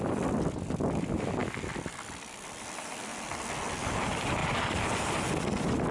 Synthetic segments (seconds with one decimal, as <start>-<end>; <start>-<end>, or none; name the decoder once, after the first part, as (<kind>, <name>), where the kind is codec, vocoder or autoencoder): 0.0-1.4 (vocoder, BigVGAN v2); 1.9-3.1; 3.8-5.9